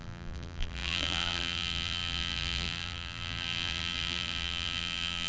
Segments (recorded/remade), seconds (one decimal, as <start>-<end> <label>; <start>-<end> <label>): 0.0-5.3 remade